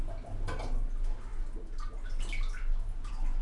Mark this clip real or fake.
real